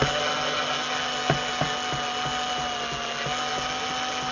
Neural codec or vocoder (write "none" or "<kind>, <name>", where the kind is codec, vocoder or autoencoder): none